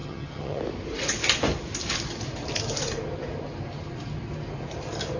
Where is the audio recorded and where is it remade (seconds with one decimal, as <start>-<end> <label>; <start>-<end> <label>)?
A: 0.0-0.6 remade; 0.6-5.2 recorded